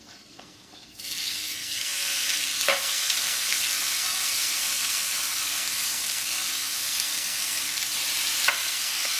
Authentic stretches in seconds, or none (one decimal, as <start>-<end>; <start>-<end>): 7.9-8.5